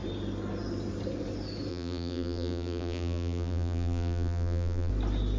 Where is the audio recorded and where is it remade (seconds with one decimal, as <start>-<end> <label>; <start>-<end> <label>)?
0.0-1.7 recorded; 1.7-4.9 remade; 4.9-5.4 recorded